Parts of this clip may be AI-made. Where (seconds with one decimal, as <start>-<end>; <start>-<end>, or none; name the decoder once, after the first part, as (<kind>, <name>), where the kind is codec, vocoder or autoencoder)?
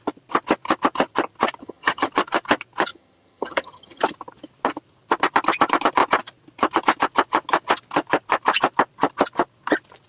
1.6-2.1 (vocoder, HiFi-GAN); 2.9-4.0